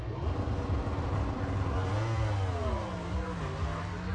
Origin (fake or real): real